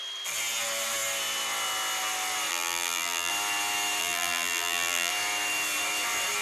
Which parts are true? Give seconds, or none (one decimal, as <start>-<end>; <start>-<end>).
0.0-2.5; 3.3-4.0; 5.1-6.4